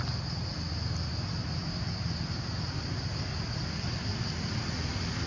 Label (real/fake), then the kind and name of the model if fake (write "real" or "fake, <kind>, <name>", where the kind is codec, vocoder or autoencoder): fake, vocoder, BigVGAN v2